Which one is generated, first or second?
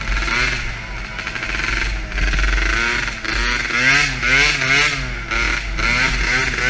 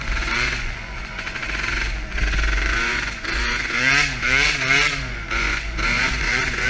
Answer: second